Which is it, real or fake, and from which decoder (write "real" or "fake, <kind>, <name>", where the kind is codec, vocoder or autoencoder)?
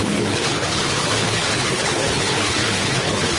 fake, codec, HILCodec